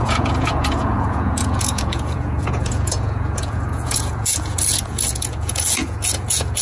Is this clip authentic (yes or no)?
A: no